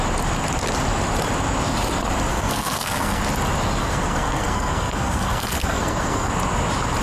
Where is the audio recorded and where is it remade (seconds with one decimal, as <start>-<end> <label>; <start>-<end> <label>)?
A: 0.0-2.3 recorded; 2.3-3.2 remade; 3.2-3.8 recorded; 3.8-6.3 remade; 6.3-7.0 recorded